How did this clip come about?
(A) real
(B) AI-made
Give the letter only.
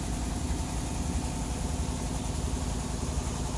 A